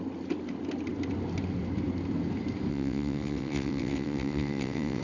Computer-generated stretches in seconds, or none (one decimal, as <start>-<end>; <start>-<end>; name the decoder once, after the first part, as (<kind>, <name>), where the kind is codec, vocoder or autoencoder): 2.7-5.0 (vocoder, WaveNeXt)